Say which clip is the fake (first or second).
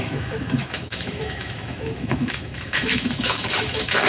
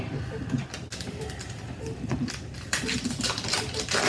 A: first